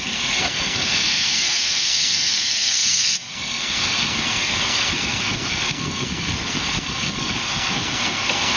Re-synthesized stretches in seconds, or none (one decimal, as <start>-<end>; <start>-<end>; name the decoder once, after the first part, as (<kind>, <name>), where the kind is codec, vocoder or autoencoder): 0.0-8.6 (codec, SNAC)